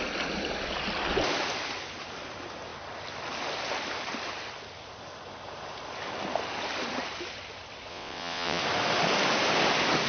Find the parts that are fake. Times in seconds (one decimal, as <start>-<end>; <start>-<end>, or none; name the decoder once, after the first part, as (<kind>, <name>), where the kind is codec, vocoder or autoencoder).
7.9-8.6 (vocoder, WaveNeXt)